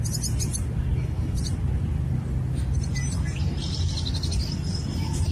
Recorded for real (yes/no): yes